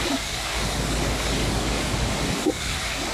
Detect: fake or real fake